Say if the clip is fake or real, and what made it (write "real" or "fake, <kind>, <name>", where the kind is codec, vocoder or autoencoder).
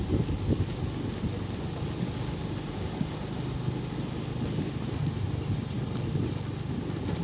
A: real